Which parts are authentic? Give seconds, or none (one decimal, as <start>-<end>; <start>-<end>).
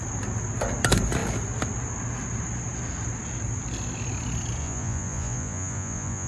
0.0-4.6